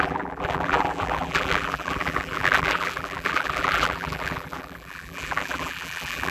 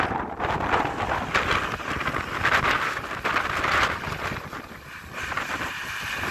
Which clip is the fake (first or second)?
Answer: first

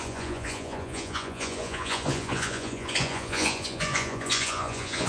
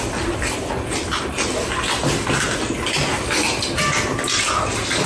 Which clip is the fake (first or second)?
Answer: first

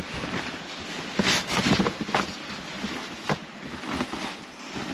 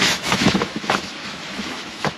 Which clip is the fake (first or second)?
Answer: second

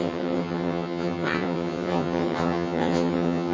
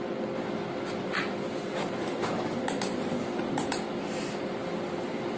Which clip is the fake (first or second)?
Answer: first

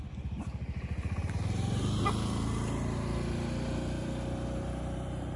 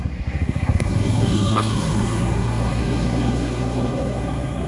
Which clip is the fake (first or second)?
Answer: second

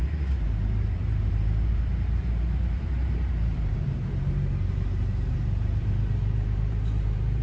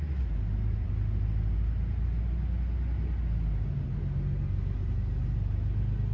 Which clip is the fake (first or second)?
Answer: first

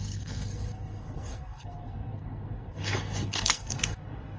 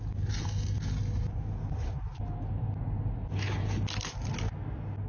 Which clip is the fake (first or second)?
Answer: first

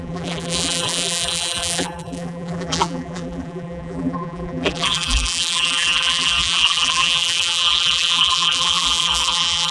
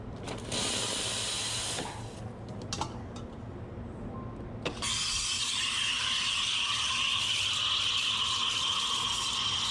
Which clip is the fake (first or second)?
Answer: first